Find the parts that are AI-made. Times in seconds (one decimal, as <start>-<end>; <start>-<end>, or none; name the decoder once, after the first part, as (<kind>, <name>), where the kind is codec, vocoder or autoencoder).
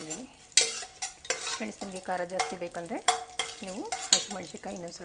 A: none